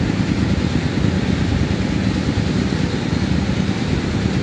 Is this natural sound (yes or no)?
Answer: yes